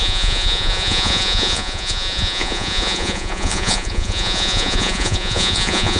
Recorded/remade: remade